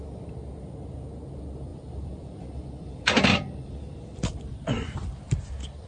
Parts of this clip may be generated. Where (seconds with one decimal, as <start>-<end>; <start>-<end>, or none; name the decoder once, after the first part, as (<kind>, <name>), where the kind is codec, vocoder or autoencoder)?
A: 1.7-5.2 (vocoder, BigVGAN v2)